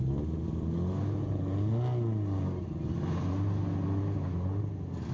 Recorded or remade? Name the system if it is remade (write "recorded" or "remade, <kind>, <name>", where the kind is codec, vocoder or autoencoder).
recorded